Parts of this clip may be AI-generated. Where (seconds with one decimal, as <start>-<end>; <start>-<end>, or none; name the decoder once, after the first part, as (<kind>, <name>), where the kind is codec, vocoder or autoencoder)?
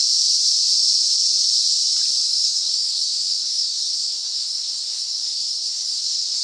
2.3-6.4 (codec, SNAC)